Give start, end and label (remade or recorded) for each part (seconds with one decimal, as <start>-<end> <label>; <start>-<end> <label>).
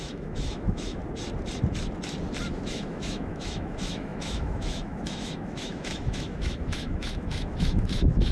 0.0-1.0 remade; 1.0-2.5 recorded; 2.5-8.3 remade